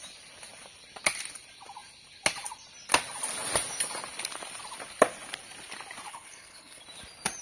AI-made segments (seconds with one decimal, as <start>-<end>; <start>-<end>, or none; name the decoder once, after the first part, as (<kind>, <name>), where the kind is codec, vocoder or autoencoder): 6.1-6.8 (codec, HILCodec)